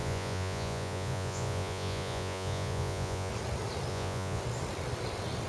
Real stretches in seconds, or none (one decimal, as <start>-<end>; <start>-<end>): 3.3-3.9; 4.4-5.5

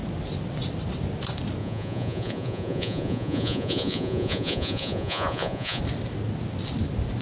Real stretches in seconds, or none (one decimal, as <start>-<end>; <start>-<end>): 0.0-1.6; 5.8-7.2

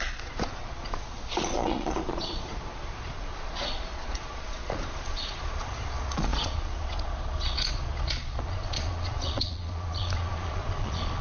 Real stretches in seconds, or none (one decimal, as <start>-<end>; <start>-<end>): none

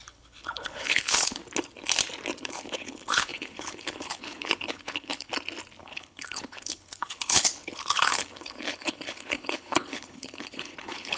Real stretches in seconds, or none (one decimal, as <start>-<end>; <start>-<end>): 1.4-2.4; 5.3-5.8

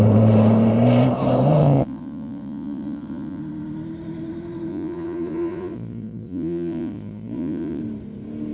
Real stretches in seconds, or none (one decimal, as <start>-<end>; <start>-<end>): 0.0-1.6; 3.4-4.7; 7.8-8.5

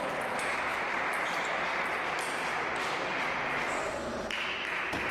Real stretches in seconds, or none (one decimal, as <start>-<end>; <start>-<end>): 0.0-0.7; 2.7-5.1

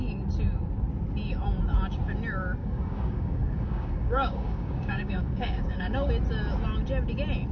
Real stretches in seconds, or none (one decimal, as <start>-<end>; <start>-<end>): 0.0-2.6; 6.1-7.5